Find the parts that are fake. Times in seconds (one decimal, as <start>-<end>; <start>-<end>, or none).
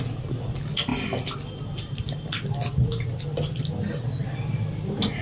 none